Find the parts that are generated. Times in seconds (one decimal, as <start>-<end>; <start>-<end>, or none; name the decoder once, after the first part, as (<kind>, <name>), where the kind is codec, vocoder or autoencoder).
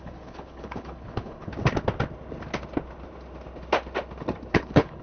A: 0.0-1.5 (codec, HILCodec); 4.5-5.0